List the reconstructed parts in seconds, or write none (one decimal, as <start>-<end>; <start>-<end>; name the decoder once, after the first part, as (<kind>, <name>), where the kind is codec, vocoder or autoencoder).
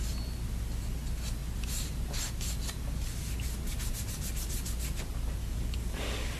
5.4-6.4 (codec, DAC)